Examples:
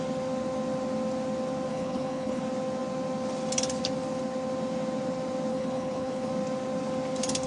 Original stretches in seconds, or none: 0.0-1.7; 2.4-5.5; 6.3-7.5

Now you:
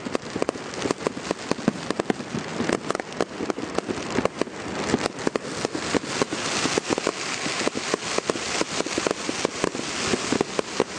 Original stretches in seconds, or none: 0.0-11.0

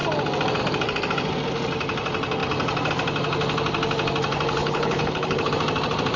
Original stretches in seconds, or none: 0.0-4.6; 5.5-6.2

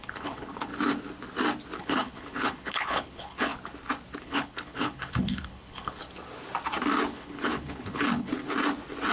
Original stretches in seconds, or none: 0.7-1.8; 3.5-4.2; 6.0-7.1; 8.3-9.1

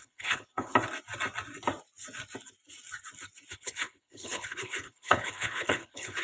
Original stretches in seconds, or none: 0.7-3.5

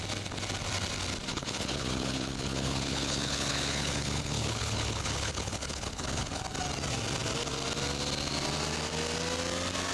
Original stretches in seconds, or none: 0.0-1.3; 6.4-9.9

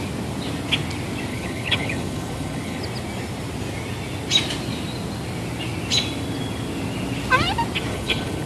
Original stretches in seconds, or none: 0.0-1.3; 2.8-7.9

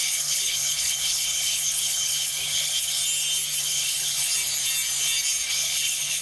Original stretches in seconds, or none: 3.0-3.6; 4.3-5.5